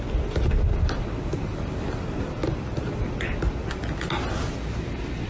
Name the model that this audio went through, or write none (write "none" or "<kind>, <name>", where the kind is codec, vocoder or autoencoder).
none